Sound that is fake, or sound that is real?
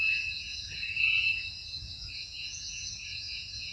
fake